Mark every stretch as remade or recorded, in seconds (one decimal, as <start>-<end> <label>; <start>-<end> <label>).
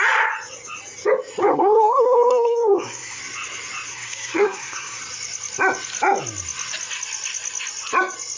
0.0-1.4 recorded; 1.4-3.2 remade; 3.2-3.9 recorded; 3.9-5.0 remade; 5.0-8.4 recorded